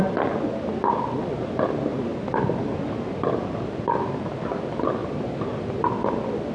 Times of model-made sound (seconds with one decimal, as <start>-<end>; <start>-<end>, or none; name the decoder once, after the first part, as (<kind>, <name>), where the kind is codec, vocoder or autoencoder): 2.1-4.6 (vocoder, BigVGAN v2); 5.0-5.7